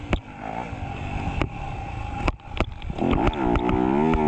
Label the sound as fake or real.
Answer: real